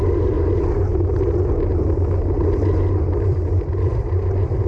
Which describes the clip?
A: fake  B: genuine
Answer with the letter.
B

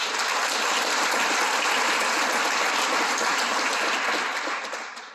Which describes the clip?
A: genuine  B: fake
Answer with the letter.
A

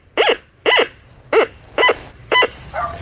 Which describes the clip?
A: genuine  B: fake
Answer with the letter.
A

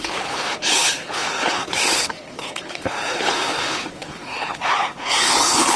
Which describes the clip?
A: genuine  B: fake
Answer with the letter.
B